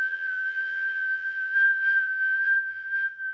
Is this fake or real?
fake